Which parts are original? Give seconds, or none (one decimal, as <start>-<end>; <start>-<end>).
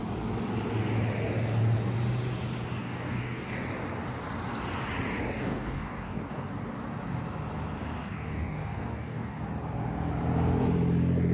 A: 0.0-2.8; 3.5-5.2; 6.5-8.0; 9.4-11.3